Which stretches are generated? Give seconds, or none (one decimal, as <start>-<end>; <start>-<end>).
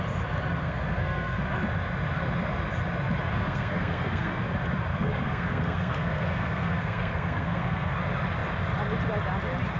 0.6-1.5; 3.3-4.3; 4.9-8.0